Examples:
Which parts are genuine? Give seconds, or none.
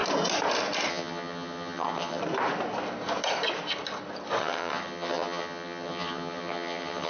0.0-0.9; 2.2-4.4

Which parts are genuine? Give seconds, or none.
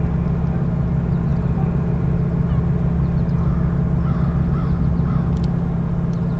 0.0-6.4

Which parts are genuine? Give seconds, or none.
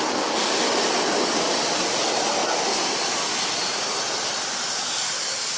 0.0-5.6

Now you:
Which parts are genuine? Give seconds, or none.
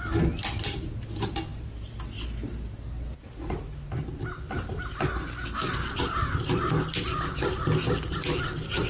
0.0-8.9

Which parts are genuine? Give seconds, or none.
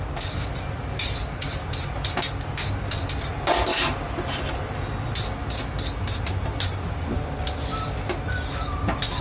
0.0-9.2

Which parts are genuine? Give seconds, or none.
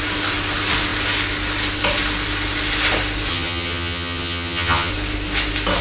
0.0-3.3; 4.9-5.8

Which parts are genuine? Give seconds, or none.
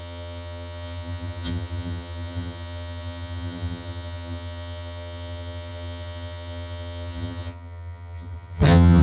none